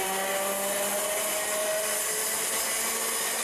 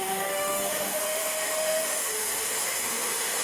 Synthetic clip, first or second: second